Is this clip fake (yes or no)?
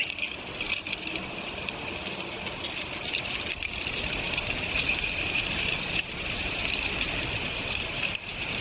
no